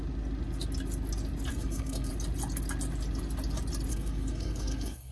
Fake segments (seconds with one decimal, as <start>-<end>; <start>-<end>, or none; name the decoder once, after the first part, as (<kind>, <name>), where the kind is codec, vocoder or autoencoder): 1.5-2.1 (codec, SNAC); 3.9-5.1